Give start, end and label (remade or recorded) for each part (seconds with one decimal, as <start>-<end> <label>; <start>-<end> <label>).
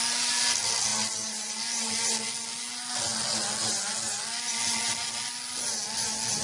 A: 0.0-6.4 recorded